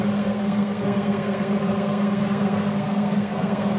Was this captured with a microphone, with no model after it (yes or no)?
no